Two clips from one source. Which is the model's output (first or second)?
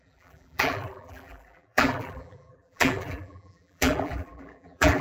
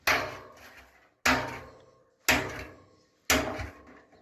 first